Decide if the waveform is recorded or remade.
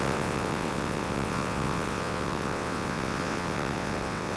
remade